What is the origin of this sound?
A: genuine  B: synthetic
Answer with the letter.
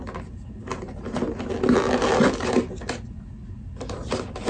A